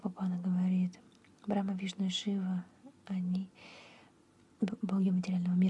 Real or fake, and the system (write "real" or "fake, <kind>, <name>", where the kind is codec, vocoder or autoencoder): real